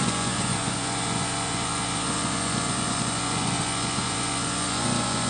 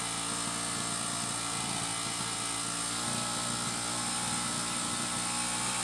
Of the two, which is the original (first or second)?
second